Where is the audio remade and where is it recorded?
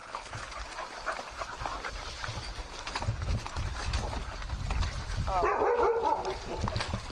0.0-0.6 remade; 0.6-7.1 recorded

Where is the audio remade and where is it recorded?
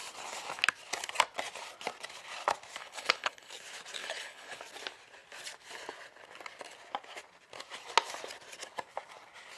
0.0-2.8 recorded; 2.8-3.5 remade; 3.5-4.0 recorded; 4.0-4.6 remade; 4.6-9.6 recorded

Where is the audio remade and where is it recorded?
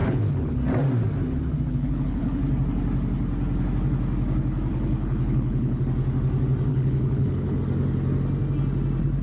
0.0-0.6 remade; 0.6-1.7 recorded; 1.7-2.4 remade; 2.4-4.7 recorded; 4.7-5.8 remade; 5.8-6.7 recorded; 6.7-7.6 remade; 7.6-9.2 recorded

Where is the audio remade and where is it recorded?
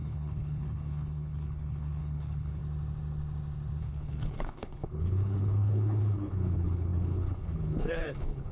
0.0-2.6 remade; 2.6-3.8 recorded; 3.8-8.5 remade